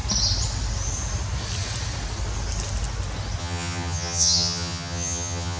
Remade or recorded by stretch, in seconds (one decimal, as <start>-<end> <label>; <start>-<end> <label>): 0.0-3.4 recorded; 3.4-5.6 remade